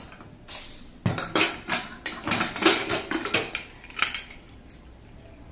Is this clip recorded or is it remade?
recorded